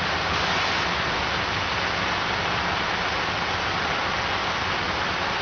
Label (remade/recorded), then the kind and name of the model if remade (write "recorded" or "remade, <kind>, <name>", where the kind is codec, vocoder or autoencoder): recorded